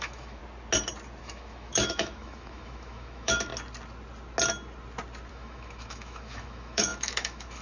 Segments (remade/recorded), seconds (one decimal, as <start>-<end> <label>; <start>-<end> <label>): 0.0-0.4 remade; 0.4-1.2 recorded; 1.2-3.5 remade; 3.5-5.3 recorded; 5.3-7.6 remade